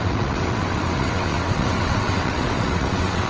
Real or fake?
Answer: fake